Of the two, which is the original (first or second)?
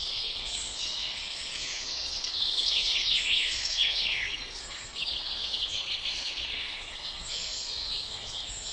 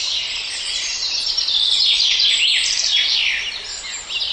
second